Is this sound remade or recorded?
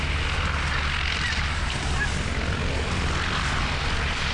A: recorded